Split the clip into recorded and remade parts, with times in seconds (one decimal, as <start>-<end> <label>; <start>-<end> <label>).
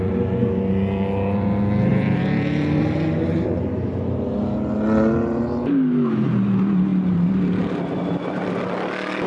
0.0-1.9 recorded; 1.9-2.8 remade; 2.8-6.9 recorded; 6.9-7.6 remade; 7.6-9.3 recorded